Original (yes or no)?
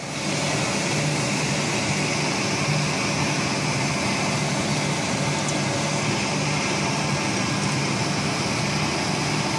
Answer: yes